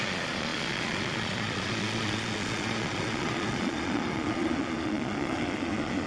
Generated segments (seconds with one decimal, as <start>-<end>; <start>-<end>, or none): 0.0-6.1